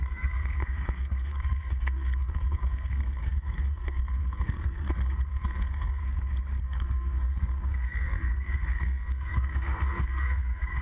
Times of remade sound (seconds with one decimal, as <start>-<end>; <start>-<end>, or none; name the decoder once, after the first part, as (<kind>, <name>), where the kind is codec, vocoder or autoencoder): 0.0-6.0 (codec, SNAC); 6.6-10.8